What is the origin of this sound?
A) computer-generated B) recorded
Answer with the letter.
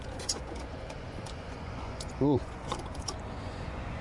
A